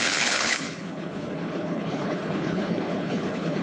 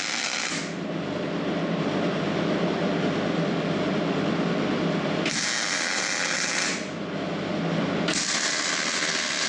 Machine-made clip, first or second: first